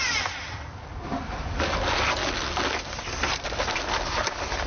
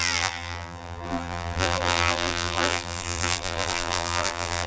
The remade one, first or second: second